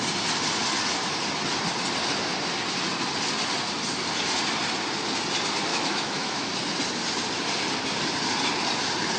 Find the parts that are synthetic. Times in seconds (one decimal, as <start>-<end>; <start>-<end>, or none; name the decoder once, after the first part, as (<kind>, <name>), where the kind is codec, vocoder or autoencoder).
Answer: 5.7-6.5 (autoencoder, DAC-VAE)